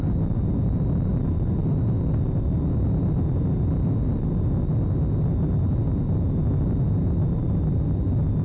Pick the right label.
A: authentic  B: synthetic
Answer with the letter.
A